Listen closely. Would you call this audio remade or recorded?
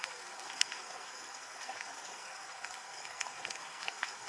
remade